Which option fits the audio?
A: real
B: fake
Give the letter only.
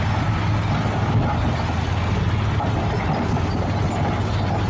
A